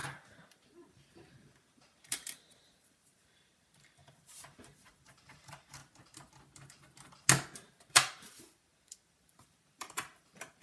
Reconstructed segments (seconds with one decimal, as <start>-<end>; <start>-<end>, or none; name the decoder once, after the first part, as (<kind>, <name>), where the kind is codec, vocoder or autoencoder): 0.0-5.8 (vocoder, BigVGAN v2); 7.9-10.6